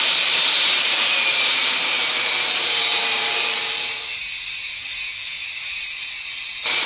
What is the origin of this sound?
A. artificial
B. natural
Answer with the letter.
A